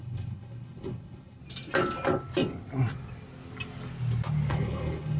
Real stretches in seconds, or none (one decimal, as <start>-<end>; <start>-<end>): 1.4-4.5